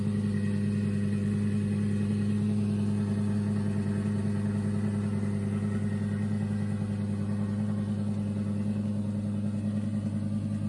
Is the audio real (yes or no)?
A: yes